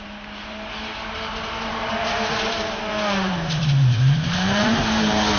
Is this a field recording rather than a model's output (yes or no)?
no